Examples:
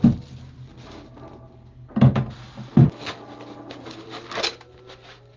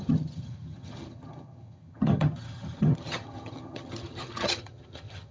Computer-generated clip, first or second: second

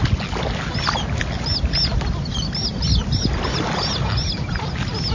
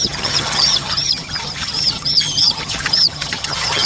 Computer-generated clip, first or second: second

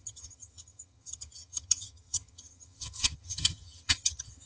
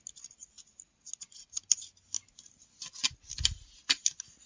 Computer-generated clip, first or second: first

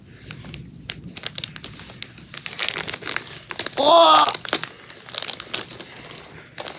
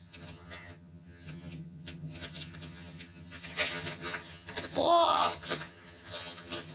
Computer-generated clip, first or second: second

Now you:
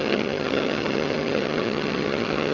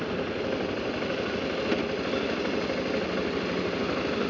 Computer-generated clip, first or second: first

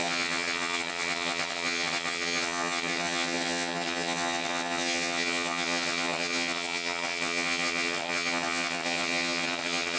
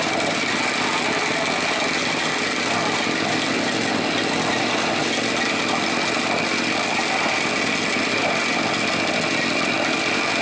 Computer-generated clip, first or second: first